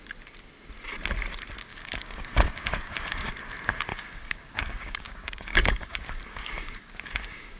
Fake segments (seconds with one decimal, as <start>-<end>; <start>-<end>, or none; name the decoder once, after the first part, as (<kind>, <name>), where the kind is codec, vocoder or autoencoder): 1.7-3.3 (codec, DAC); 3.9-7.6

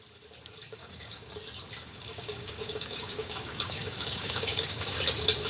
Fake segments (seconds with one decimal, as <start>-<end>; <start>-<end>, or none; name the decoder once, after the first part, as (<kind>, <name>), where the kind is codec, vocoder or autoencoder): 0.8-1.3 (codec, DAC); 1.9-5.0